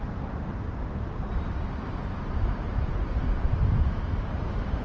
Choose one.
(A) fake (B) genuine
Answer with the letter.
A